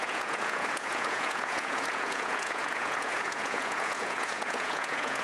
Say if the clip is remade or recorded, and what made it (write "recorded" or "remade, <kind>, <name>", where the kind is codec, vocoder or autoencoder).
remade, vocoder, Vocos